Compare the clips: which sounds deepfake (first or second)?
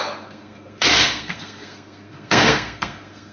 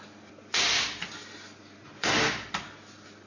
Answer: first